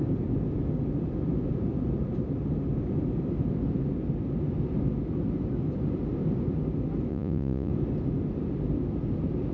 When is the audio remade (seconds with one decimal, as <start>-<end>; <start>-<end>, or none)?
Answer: 7.1-7.7